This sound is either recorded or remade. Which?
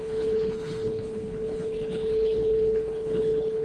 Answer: remade